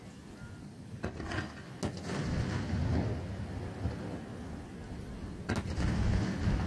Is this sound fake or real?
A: real